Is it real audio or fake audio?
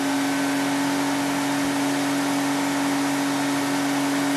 real